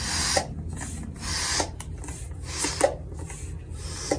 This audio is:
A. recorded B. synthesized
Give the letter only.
A